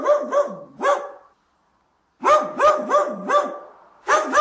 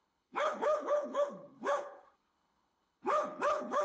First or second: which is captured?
first